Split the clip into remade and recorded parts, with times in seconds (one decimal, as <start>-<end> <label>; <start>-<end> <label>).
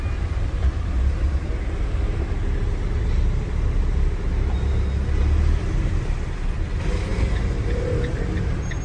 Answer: 0.0-8.8 recorded